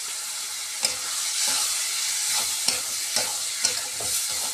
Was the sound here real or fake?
real